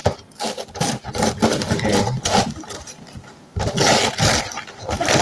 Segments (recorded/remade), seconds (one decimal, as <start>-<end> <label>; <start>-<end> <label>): 0.0-5.2 recorded